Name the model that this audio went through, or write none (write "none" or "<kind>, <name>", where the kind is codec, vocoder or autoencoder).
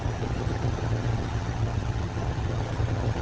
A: vocoder, HiFi-GAN